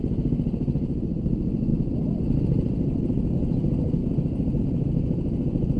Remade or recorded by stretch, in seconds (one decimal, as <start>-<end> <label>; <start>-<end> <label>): 0.0-1.7 recorded; 1.7-3.3 remade; 3.3-4.0 recorded; 4.0-4.6 remade; 4.6-5.8 recorded